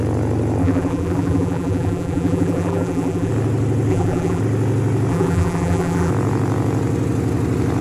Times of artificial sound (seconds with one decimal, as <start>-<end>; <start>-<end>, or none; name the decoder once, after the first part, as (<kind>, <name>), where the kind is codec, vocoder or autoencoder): 0.6-3.3 (vocoder, BigVGAN v2); 3.9-4.4; 5.1-6.1